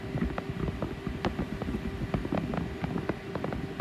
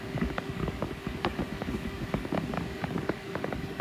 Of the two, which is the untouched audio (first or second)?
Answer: first